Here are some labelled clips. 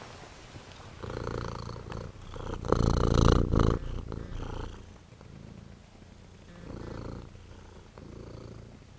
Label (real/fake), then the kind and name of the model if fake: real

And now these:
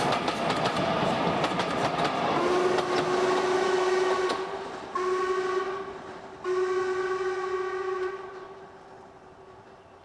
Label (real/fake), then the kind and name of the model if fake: real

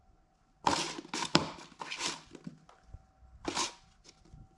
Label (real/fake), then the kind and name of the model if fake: real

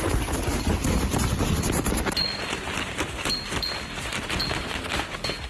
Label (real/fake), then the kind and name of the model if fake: real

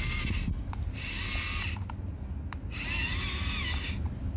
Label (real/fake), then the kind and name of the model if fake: real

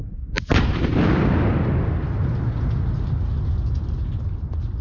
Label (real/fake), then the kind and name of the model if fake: real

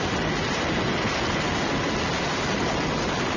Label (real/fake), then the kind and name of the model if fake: real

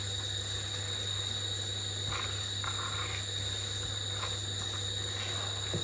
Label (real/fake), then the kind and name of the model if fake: real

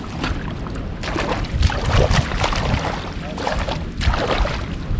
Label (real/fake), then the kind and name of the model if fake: real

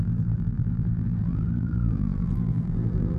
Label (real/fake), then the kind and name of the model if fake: fake, vocoder, BigVGAN v2